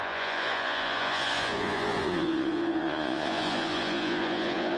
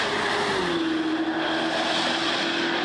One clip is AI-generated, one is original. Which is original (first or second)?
second